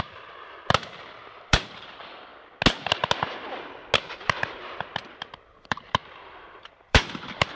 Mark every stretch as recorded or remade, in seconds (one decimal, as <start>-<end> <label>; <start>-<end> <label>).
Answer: 0.0-2.3 remade; 2.3-4.1 recorded; 4.1-4.6 remade; 4.6-5.1 recorded; 5.1-7.6 remade